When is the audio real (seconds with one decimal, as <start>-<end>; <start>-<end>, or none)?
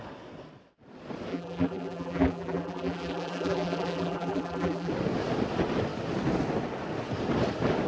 0.0-1.3; 4.9-7.9